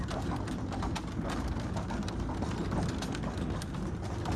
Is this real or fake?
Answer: real